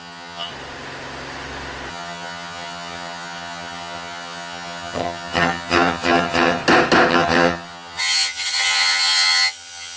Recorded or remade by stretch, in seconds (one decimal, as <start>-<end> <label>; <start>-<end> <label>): 0.0-0.5 remade; 0.5-1.9 recorded; 1.9-6.6 remade; 6.6-7.1 recorded; 7.1-10.0 remade